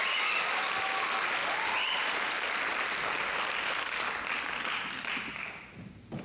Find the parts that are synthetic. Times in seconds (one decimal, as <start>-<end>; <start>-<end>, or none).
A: 1.4-2.5